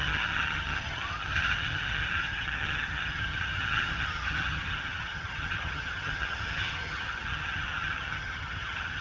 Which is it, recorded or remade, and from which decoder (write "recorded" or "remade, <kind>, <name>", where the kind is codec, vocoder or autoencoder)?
remade, vocoder, HiFi-GAN